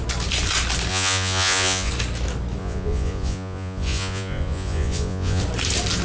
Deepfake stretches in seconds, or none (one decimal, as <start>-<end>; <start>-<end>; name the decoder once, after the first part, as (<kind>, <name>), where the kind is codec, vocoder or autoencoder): 0.9-1.9 (vocoder, Vocos); 2.6-5.4